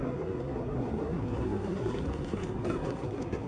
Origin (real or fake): fake